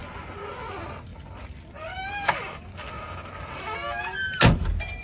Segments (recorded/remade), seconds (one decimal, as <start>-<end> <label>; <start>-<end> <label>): 0.0-0.7 remade; 0.7-1.1 recorded; 1.1-2.5 remade; 2.5-5.0 recorded